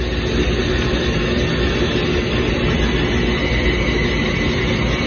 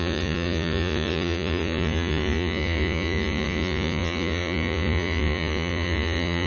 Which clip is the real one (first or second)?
first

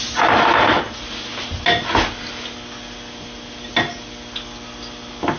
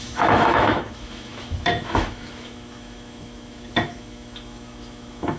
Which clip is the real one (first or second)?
first